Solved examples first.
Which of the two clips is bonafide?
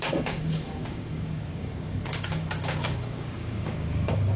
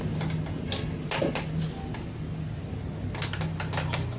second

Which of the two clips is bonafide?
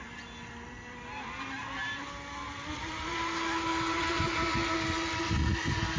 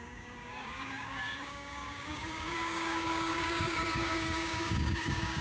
first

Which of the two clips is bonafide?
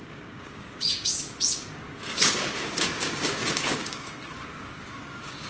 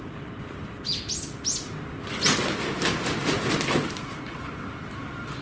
second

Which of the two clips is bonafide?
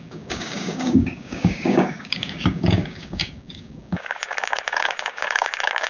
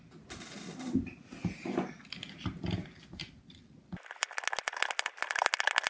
second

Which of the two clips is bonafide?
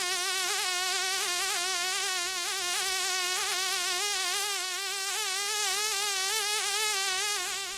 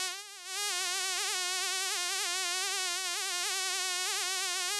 second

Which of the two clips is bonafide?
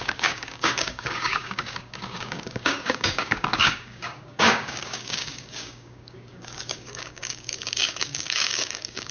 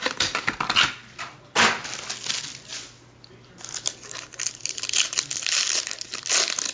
second